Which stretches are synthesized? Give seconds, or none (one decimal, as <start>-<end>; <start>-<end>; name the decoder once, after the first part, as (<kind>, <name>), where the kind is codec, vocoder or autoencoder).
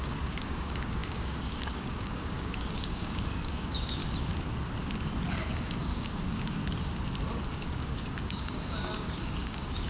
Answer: 0.0-4.0 (codec, DAC); 5.5-6.6; 7.5-9.9